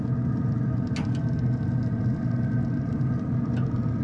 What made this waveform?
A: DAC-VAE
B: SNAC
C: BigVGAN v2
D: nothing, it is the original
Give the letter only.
D